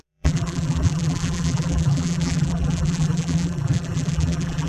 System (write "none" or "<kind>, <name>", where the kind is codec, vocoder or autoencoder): vocoder, BigVGAN v2